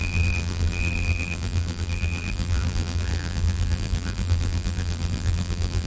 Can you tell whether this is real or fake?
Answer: fake